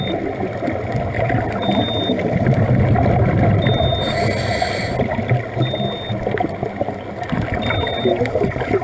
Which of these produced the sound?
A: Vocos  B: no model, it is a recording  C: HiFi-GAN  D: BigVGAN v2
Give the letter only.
B